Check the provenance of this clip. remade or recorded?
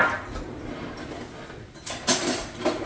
recorded